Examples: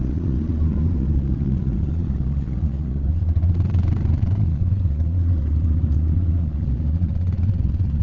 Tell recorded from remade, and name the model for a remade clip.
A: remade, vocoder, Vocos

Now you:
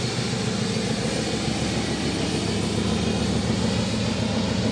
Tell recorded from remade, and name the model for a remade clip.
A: recorded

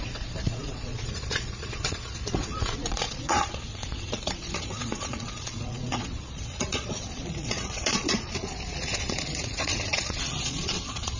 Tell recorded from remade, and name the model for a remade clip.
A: remade, vocoder, Vocos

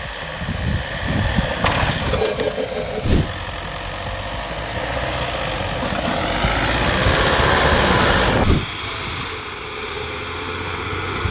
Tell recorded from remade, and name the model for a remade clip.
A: recorded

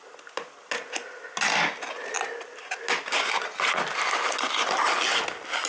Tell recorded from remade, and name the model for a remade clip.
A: recorded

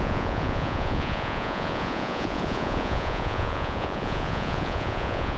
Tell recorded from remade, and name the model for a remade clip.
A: remade, vocoder, Vocos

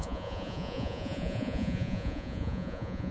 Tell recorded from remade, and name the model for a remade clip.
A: remade, vocoder, Vocos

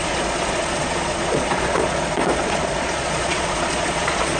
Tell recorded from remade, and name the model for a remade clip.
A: remade, vocoder, Vocos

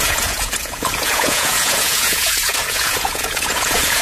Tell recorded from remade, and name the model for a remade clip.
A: remade, vocoder, Vocos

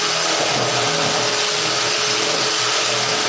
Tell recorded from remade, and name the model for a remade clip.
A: recorded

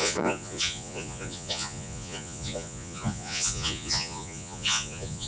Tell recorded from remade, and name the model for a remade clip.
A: remade, vocoder, Vocos